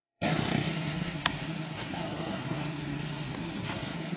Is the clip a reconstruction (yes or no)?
yes